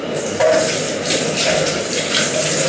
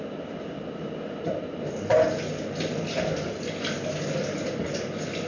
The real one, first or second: second